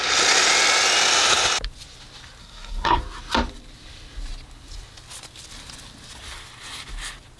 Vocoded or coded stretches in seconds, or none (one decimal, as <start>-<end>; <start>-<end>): 2.4-3.0